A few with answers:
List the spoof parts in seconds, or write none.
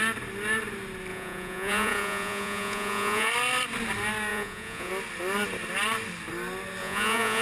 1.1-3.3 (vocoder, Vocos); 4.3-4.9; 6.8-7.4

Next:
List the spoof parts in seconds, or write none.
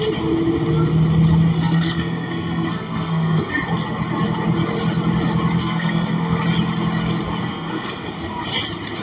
1.5-3.5 (codec, SNAC); 5.6-6.4; 7.4-8.1